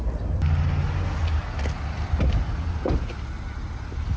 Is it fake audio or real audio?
real